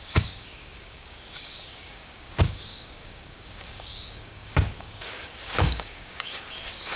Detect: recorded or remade remade